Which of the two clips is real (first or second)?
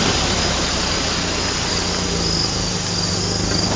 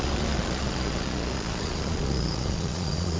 first